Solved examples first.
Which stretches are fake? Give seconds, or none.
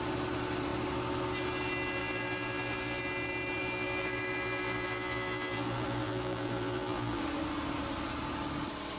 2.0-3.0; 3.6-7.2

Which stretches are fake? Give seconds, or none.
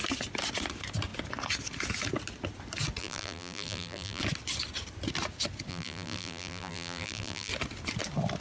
3.0-4.2; 5.7-7.5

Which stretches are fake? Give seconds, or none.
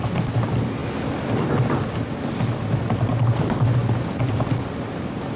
3.8-4.6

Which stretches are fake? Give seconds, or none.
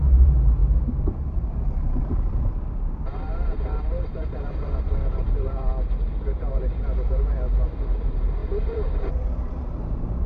0.0-5.7; 6.4-10.3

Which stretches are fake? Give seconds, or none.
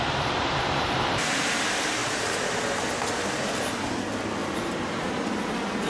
0.0-1.3; 2.0-2.6; 4.4-5.1